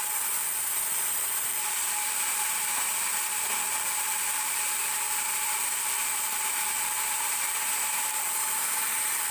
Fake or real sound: fake